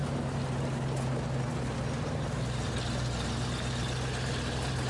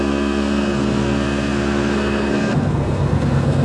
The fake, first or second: second